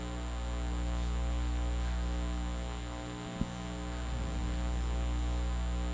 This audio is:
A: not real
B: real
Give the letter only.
B